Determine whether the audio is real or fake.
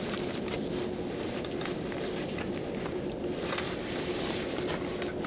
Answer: real